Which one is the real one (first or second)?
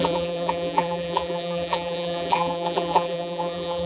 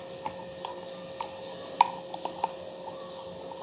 second